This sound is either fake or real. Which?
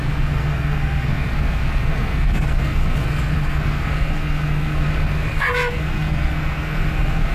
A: fake